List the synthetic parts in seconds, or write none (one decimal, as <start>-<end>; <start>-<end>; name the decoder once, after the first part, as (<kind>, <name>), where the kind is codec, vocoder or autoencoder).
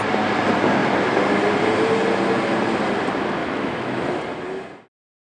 3.4-4.2 (autoencoder, DAC-VAE)